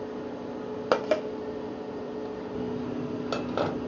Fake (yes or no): no